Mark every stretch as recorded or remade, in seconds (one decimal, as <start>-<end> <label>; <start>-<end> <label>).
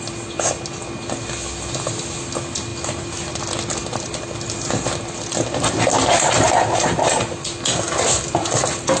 0.0-9.0 recorded